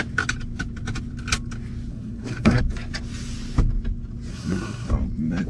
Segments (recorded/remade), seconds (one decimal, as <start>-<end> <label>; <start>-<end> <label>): 0.0-1.9 recorded; 1.9-2.6 remade; 2.6-4.3 recorded; 4.3-4.9 remade; 4.9-5.5 recorded